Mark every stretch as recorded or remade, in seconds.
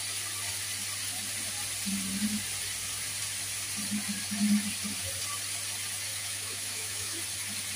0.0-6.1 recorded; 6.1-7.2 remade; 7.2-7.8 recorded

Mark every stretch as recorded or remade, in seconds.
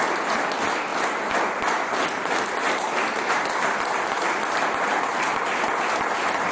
0.0-6.5 recorded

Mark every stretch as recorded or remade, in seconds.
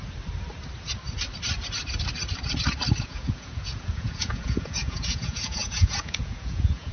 0.0-3.0 recorded; 3.0-6.9 remade